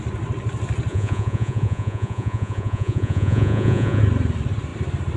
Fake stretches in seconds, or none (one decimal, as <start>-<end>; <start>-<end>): 0.9-4.0